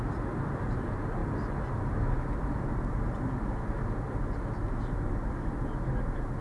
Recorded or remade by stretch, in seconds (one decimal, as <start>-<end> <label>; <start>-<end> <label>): 0.0-6.4 recorded